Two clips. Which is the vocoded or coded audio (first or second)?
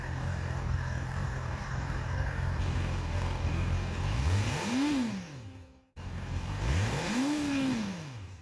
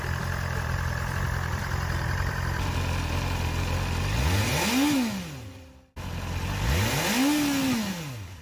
first